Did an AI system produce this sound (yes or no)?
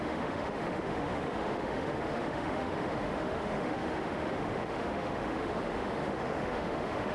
yes